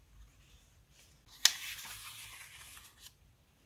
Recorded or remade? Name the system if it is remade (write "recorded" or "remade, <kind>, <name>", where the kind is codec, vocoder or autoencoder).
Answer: recorded